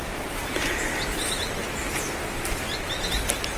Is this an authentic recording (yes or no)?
yes